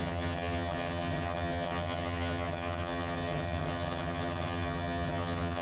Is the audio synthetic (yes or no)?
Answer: yes